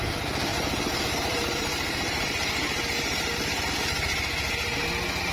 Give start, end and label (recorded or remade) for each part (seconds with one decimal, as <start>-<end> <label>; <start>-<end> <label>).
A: 0.0-0.5 recorded; 0.5-3.7 remade; 3.7-5.3 recorded